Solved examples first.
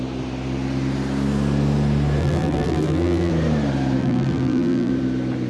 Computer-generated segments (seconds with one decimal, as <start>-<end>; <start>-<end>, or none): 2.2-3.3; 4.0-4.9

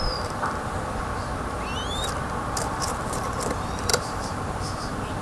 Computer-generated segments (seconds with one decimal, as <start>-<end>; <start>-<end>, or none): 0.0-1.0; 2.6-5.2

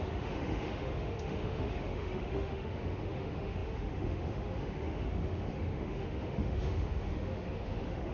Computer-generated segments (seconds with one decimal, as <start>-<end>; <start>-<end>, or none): 0.0-8.1

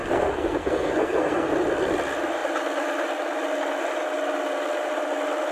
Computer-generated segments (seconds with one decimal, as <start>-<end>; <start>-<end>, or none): 0.0-1.5

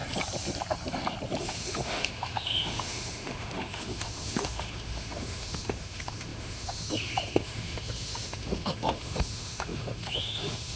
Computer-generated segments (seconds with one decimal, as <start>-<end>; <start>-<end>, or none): 1.4-10.8